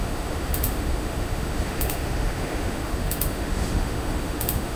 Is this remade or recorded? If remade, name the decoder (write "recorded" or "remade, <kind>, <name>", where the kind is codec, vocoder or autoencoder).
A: remade, autoencoder, DAC-VAE